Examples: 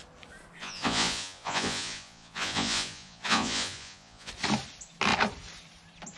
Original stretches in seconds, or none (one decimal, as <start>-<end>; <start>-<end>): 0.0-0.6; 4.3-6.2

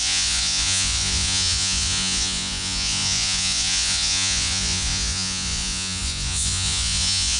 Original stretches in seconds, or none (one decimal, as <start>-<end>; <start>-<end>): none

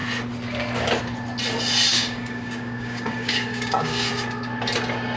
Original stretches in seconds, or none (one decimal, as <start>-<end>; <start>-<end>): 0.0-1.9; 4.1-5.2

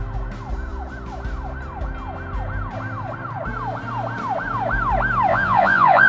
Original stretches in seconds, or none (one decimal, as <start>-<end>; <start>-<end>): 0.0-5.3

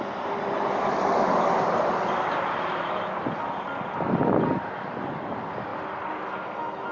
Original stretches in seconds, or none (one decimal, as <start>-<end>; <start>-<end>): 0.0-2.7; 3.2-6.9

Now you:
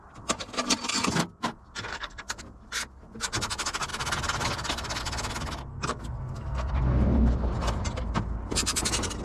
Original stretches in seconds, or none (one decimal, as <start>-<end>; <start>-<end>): 0.0-1.9; 2.4-5.7; 6.7-9.2

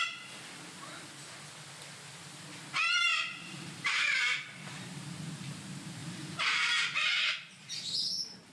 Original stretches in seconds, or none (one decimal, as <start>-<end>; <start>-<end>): 0.0-3.1; 4.2-6.0; 6.8-8.5

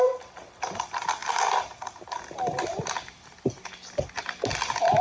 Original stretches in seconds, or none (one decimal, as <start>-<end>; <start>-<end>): 0.0-5.0